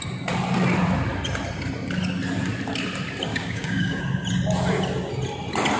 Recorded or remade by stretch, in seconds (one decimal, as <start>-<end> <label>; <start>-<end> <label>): 0.0-3.3 recorded; 3.3-4.0 remade; 4.0-5.8 recorded